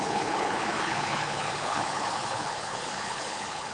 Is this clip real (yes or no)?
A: no